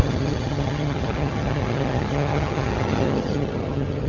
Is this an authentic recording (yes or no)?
no